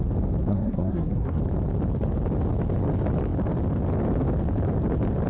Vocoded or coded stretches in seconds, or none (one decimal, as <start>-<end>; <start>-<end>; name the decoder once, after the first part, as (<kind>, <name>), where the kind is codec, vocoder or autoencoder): 0.5-1.4 (codec, SNAC)